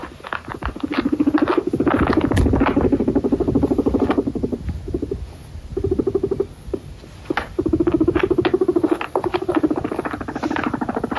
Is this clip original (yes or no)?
yes